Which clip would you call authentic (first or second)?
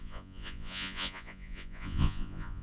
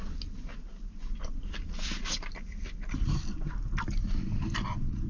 second